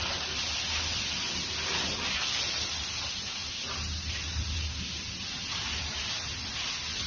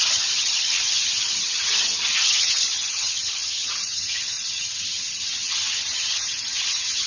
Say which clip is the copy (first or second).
second